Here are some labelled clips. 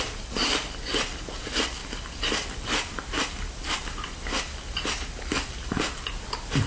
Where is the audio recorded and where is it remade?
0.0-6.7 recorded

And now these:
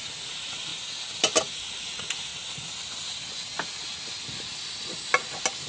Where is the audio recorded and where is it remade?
0.0-0.7 remade; 0.7-1.8 recorded; 1.8-2.3 remade; 2.3-5.7 recorded